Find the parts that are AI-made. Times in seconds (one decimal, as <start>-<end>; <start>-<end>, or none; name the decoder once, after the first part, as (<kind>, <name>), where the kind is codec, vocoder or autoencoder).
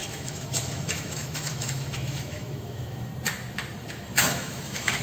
0.0-3.1 (autoencoder, DAC-VAE); 3.9-5.0